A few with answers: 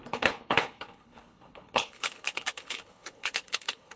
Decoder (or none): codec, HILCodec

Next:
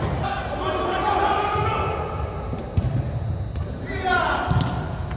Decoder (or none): none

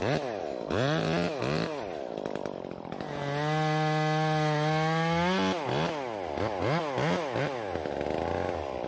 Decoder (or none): none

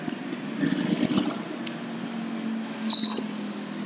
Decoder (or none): none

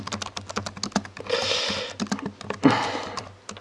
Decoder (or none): none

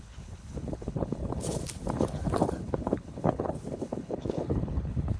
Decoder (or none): codec, HILCodec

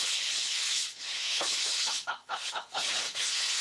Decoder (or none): codec, HILCodec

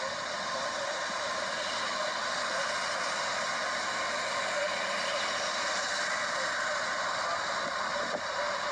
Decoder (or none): none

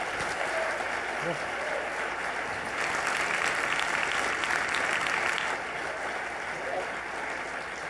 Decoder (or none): none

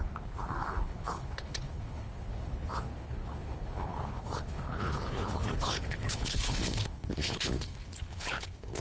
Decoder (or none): codec, HILCodec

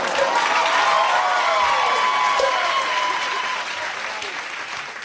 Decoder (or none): none